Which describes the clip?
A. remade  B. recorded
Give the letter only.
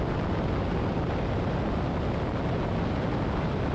B